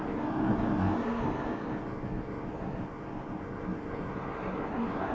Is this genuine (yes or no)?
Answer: no